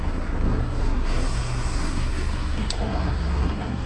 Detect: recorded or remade remade